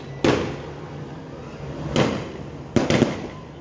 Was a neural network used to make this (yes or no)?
no